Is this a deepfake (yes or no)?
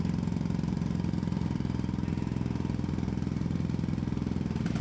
yes